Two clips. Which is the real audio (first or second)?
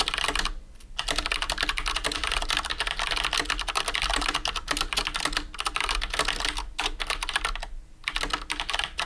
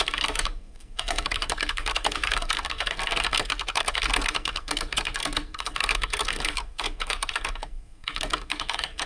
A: first